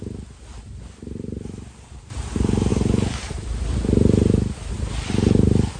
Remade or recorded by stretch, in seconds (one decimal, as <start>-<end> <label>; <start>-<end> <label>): 0.0-5.8 recorded